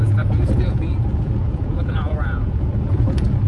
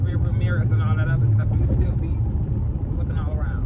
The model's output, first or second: first